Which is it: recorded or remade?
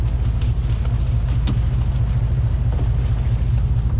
recorded